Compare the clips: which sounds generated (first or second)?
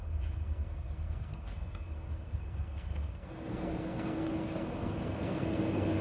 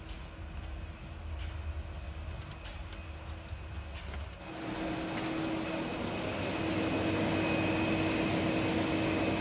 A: first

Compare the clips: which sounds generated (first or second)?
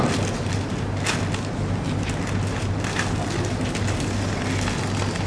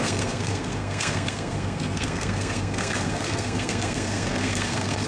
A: second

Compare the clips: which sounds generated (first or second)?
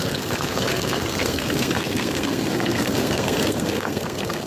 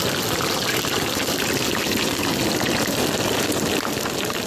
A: first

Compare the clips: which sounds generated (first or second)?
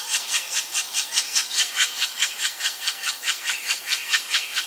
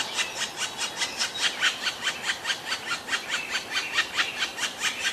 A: first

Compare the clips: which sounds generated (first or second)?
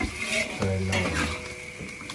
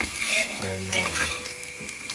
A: second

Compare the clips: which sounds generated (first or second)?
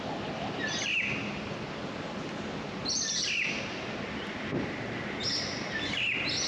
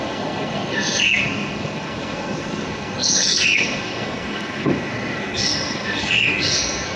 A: second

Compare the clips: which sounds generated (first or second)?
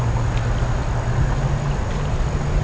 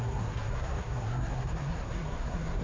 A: second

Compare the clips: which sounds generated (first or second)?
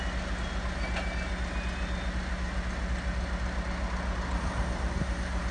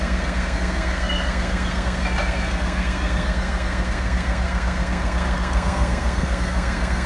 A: second